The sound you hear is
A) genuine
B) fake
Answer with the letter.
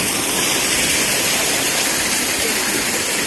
A